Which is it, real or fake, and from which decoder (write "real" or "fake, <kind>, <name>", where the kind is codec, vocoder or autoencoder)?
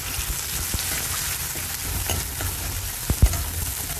real